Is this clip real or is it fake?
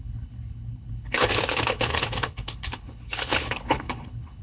fake